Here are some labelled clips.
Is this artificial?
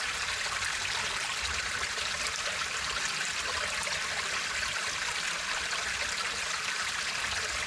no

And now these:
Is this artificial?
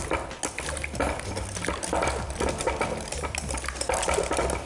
no